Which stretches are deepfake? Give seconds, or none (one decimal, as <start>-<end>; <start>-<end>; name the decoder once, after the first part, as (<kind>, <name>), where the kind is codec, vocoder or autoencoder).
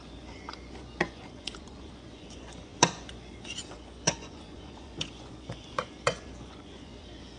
0.0-7.4 (vocoder, Vocos)